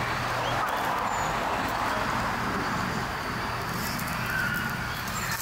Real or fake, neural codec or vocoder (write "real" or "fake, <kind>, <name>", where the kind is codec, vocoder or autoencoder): real